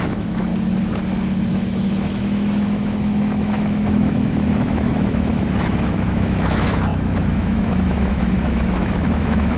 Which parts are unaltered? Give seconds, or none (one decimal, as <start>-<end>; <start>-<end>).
0.5-1.5